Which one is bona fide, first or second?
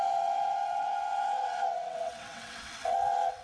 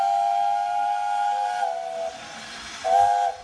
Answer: second